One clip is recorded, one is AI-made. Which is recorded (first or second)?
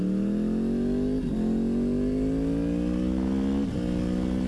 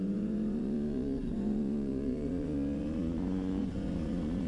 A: first